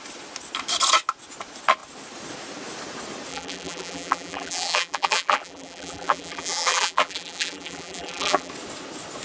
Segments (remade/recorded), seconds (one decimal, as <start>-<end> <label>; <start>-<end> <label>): 0.0-3.3 recorded; 3.3-8.5 remade; 8.5-9.2 recorded